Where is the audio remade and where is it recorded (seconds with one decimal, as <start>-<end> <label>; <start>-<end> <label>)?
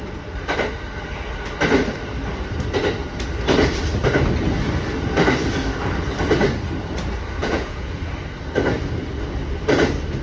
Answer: 0.0-7.4 recorded; 7.4-8.0 remade; 8.0-10.2 recorded